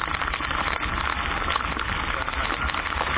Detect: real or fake real